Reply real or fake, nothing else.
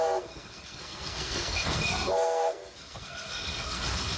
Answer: fake